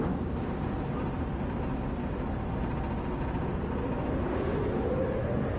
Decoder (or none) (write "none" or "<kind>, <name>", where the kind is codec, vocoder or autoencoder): none